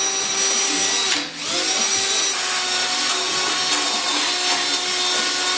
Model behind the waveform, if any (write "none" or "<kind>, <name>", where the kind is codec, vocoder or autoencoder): none